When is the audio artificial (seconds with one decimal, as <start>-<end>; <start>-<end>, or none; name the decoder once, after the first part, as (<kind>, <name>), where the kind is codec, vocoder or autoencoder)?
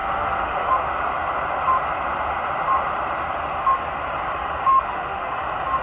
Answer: 0.0-0.7 (autoencoder, DAC-VAE); 4.7-5.3